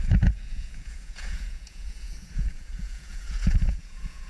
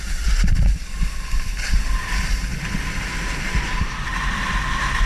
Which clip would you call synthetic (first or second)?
first